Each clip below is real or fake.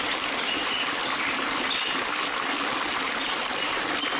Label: real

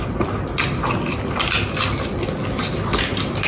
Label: real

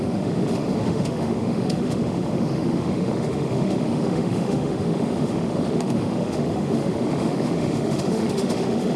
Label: fake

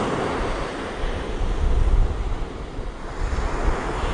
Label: real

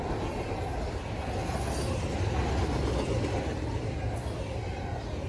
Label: real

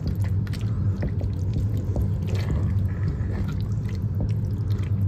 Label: real